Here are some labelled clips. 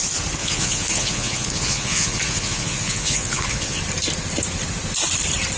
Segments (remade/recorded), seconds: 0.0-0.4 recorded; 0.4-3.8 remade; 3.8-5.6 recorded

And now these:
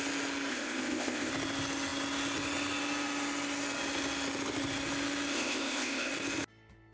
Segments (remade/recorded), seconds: 0.0-0.5 recorded; 0.5-1.3 remade; 1.3-5.3 recorded; 5.3-6.1 remade; 6.1-6.9 recorded

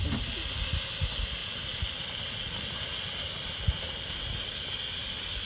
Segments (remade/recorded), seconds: 0.0-5.5 recorded

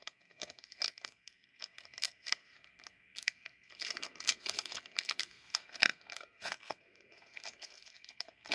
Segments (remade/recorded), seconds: 0.0-8.5 remade

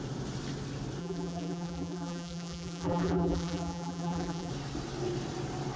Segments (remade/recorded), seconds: 0.0-1.0 recorded; 1.0-4.5 remade; 4.5-5.8 recorded

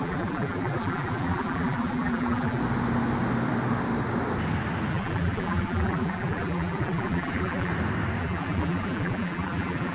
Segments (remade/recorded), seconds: 0.0-2.6 remade; 2.6-4.9 recorded; 4.9-7.7 remade; 7.7-8.2 recorded; 8.2-9.9 remade

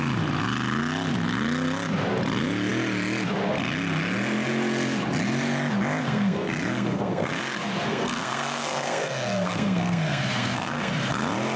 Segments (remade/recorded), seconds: 0.0-6.0 recorded; 6.0-7.4 remade; 7.4-7.9 recorded; 7.9-10.9 remade; 10.9-11.6 recorded